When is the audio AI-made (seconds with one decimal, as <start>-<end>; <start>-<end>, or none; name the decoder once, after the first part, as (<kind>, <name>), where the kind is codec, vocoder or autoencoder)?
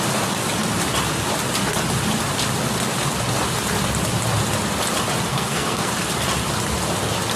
5.3-5.9 (codec, SNAC)